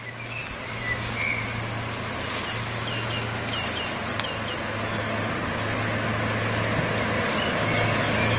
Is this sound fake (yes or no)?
no